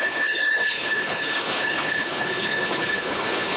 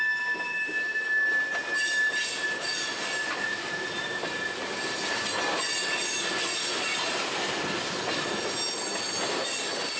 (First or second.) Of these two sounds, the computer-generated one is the first